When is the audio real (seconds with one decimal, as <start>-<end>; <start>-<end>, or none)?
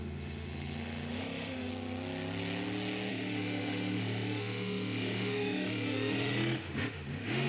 1.7-3.1